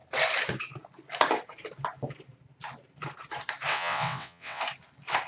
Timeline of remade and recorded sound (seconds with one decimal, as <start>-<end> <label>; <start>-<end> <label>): 0.0-3.7 recorded; 3.7-4.6 remade; 4.6-5.3 recorded